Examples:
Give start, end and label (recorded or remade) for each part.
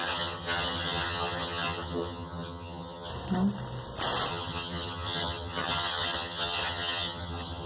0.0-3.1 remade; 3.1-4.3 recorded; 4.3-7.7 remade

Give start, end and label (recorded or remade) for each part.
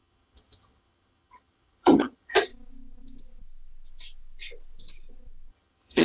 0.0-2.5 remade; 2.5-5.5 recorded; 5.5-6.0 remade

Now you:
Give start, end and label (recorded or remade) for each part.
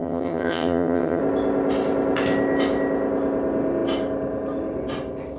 0.0-1.2 remade; 1.2-5.4 recorded